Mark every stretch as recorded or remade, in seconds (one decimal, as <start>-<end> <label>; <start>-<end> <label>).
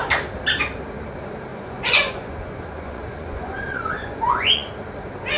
0.0-1.5 recorded; 1.5-4.7 remade; 4.7-5.4 recorded